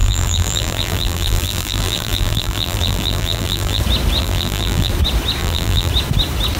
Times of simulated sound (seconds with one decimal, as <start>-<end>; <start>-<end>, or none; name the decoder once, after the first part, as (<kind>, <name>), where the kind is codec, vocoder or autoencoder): 0.0-3.8 (vocoder, BigVGAN v2); 4.2-4.9; 5.4-5.9